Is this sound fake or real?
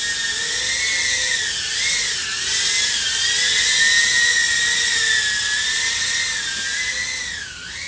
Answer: real